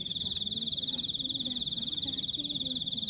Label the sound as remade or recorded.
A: recorded